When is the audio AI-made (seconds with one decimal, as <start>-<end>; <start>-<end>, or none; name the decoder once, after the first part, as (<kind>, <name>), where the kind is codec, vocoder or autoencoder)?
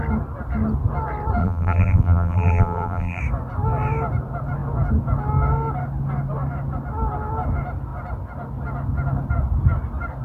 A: 1.4-3.2 (vocoder, BigVGAN v2)